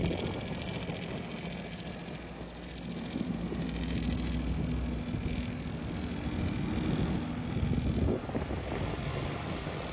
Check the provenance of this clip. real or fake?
real